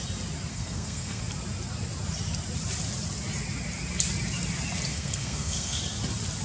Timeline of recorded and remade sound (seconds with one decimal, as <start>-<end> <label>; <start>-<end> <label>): 0.0-0.5 recorded; 0.5-1.2 remade; 1.2-4.9 recorded; 4.9-5.8 remade; 5.8-6.4 recorded